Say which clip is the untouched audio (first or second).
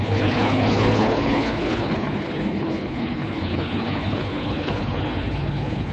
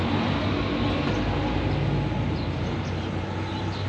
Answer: second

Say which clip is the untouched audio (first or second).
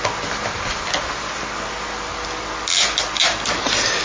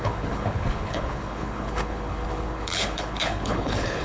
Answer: first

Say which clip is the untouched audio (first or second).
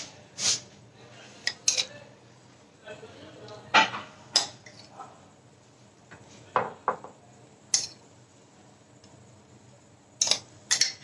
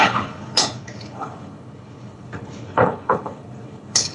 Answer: first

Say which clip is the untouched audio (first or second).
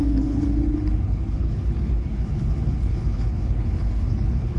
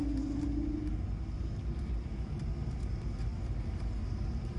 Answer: second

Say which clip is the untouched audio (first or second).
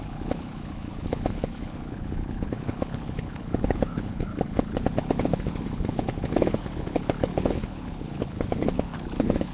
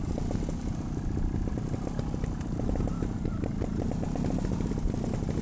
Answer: second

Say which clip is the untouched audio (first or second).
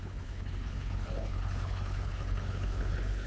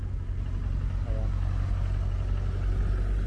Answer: second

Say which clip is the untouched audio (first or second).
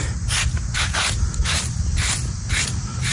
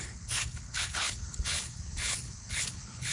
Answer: first